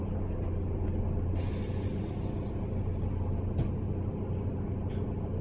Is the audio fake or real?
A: real